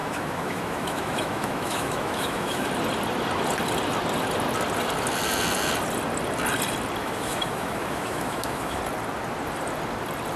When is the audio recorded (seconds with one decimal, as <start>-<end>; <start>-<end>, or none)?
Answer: 2.7-7.0; 8.8-10.4